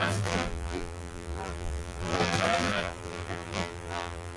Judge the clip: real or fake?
fake